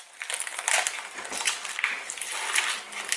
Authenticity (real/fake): real